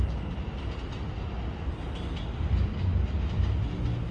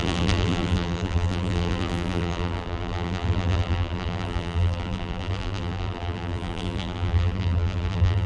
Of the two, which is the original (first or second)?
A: first